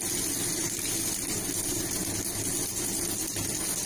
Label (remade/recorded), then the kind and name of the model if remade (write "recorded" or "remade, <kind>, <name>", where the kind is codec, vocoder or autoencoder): recorded